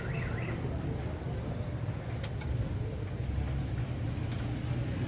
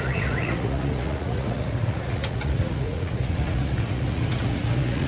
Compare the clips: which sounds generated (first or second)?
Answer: second